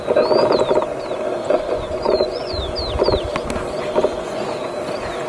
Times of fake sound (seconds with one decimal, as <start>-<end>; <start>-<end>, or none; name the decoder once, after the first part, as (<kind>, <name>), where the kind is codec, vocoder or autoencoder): 1.4-2.6 (vocoder, Vocos); 4.1-4.7